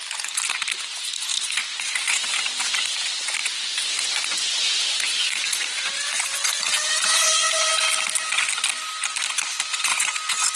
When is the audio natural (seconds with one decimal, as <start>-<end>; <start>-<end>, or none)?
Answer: 0.0-1.3; 2.3-3.4; 7.7-9.9